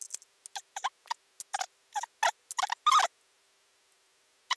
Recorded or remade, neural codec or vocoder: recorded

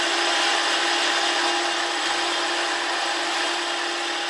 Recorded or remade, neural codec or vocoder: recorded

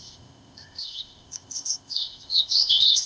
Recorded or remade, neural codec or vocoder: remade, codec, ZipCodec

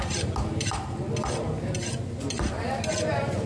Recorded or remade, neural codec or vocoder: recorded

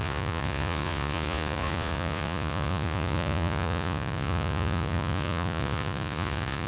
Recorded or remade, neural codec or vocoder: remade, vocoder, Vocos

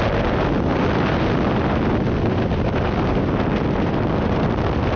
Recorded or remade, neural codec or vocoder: recorded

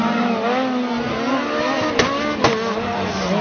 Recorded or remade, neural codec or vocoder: recorded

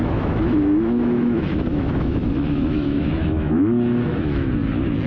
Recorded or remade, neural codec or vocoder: remade, autoencoder, DAC-VAE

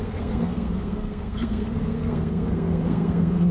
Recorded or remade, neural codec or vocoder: remade, codec, SNAC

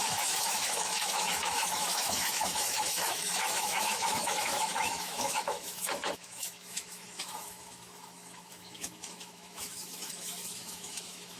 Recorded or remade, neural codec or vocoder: remade, autoencoder, DAC-VAE